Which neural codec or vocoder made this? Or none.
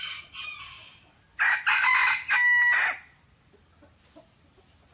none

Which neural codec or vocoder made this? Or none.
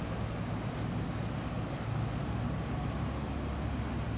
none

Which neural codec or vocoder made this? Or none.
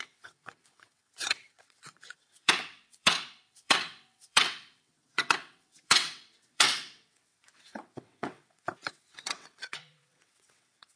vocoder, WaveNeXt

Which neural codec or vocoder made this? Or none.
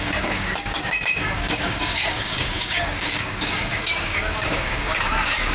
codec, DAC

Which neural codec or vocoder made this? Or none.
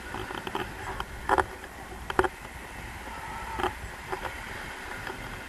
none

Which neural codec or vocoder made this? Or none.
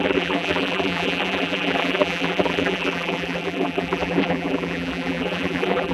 vocoder, BigVGAN v2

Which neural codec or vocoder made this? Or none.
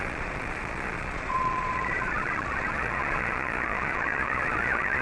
vocoder, Vocos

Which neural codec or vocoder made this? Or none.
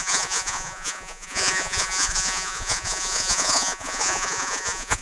vocoder, Vocos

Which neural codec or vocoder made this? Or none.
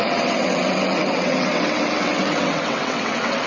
vocoder, WaveNeXt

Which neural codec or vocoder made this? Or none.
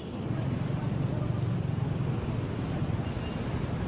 none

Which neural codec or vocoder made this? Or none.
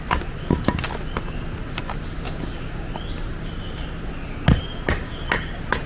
none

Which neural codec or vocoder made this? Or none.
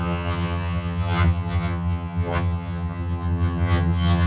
vocoder, HiFi-GAN